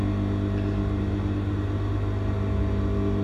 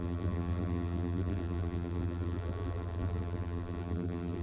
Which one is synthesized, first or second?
second